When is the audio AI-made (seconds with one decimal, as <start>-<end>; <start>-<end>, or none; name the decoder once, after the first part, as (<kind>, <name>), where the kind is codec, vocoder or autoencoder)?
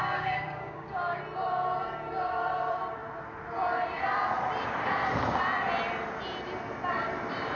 0.0-1.2 (codec, DAC)